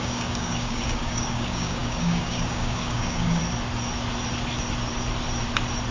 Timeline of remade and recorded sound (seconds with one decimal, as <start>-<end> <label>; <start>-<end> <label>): 0.0-3.4 remade; 3.4-5.9 recorded

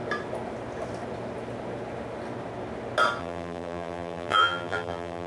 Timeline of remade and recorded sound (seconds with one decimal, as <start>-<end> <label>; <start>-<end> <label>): 0.0-3.2 recorded; 3.2-5.3 remade

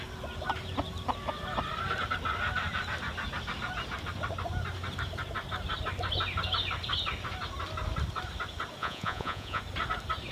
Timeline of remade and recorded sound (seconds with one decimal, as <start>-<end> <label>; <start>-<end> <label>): 0.0-8.8 recorded; 8.8-9.6 remade; 9.6-10.3 recorded

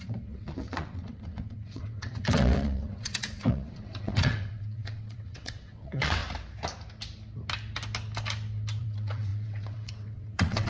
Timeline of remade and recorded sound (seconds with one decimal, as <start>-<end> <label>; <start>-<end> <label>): 0.0-6.2 remade; 6.2-8.8 recorded; 8.8-10.7 remade

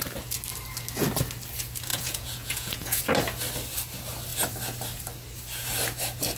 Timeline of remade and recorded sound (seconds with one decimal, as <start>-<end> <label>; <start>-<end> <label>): 0.0-1.9 recorded; 1.9-3.0 remade; 3.0-6.4 recorded

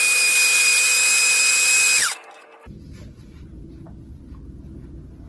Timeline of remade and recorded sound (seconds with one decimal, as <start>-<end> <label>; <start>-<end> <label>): 0.0-5.3 recorded

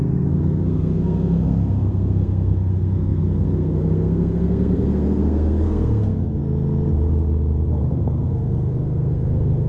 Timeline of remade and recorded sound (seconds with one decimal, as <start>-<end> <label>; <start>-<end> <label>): 0.0-6.4 remade; 6.4-7.7 recorded; 7.7-9.7 remade